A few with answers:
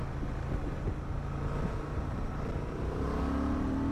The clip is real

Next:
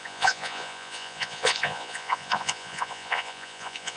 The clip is fake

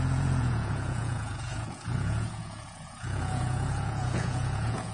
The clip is fake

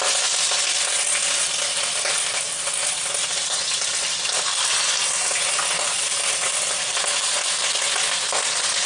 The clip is real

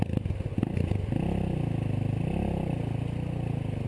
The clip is real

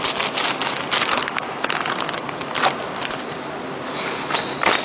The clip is real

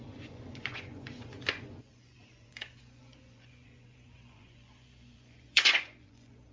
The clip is fake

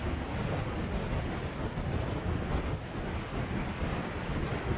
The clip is real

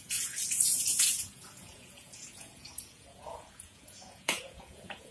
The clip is fake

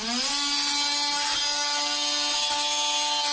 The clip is real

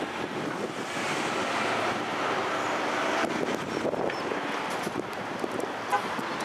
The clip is real